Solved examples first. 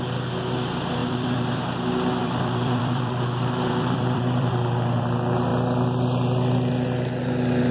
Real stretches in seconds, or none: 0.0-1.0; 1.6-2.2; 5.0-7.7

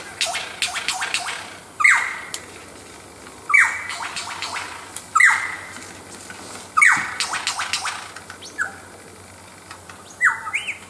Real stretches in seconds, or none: 0.0-10.9

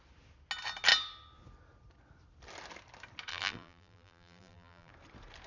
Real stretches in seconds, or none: 0.0-3.3; 4.9-5.5